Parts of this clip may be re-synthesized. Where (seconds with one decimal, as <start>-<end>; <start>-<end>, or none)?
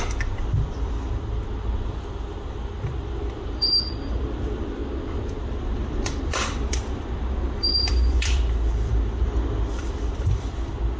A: 0.0-4.8; 5.4-11.0